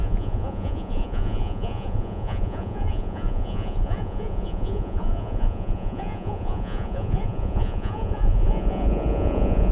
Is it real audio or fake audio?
fake